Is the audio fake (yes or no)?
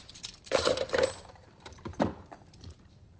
yes